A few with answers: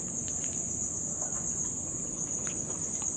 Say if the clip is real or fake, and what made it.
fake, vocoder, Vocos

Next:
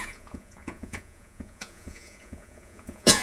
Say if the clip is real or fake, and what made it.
fake, vocoder, Vocos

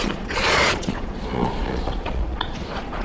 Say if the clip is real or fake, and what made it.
fake, vocoder, Vocos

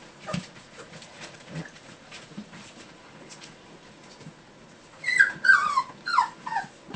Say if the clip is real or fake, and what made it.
fake, vocoder, Vocos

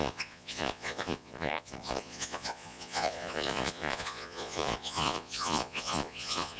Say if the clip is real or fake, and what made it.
fake, vocoder, Vocos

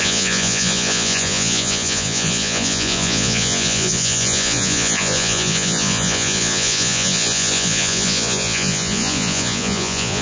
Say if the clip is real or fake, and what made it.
fake, vocoder, Vocos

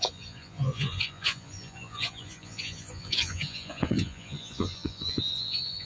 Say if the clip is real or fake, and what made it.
fake, vocoder, Vocos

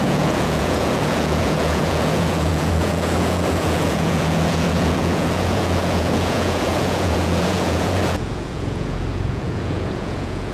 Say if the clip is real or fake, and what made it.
fake, vocoder, Vocos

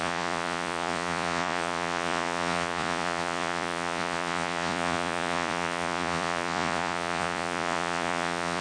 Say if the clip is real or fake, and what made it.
fake, vocoder, Vocos